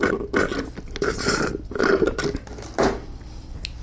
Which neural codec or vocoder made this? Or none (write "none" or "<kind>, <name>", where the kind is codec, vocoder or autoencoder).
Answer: none